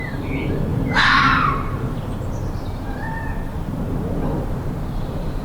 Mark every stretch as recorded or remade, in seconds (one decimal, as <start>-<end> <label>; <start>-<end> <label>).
0.0-0.7 recorded; 0.7-1.5 remade; 1.5-3.5 recorded; 3.5-4.7 remade; 4.7-5.4 recorded